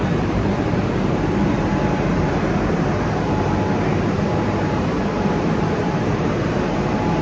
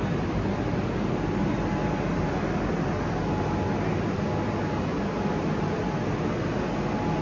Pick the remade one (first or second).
first